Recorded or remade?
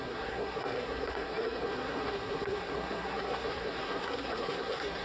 remade